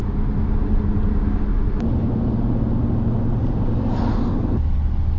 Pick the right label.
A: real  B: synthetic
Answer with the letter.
A